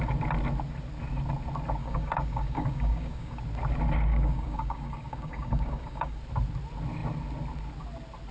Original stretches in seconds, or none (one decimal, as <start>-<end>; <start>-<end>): 0.0-1.8; 3.4-4.1; 6.2-8.3